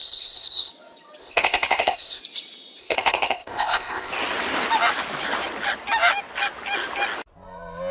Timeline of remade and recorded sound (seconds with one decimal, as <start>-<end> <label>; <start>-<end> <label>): 0.0-0.7 remade; 0.7-1.2 recorded; 1.2-2.2 remade; 2.2-2.8 recorded; 2.8-4.1 remade; 4.1-7.9 recorded